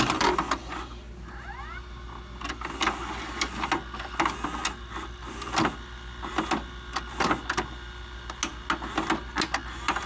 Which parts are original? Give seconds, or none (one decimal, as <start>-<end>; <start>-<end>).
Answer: 0.0-10.1